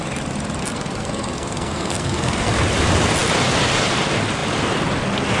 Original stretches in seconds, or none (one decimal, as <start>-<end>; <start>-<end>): 0.0-0.6; 2.5-5.4